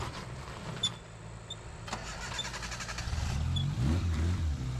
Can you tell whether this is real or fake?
real